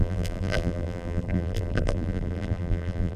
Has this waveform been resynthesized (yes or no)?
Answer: yes